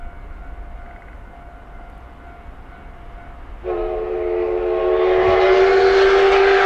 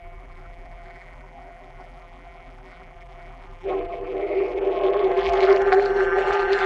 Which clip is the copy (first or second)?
second